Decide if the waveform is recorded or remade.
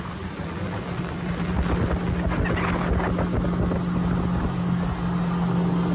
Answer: recorded